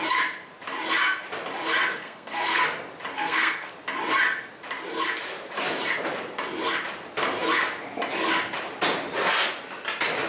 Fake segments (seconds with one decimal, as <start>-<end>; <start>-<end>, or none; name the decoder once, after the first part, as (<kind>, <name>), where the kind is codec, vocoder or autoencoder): 1.9-2.6 (codec, SNAC); 3.1-3.7